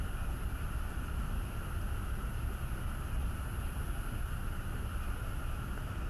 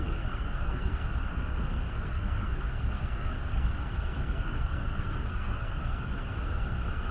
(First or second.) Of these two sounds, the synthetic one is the second